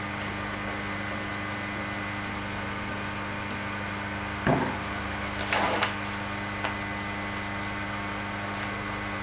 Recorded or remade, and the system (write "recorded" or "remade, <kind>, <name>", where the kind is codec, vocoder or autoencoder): recorded